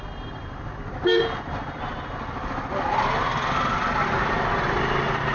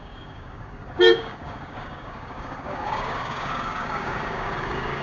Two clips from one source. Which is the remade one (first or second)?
second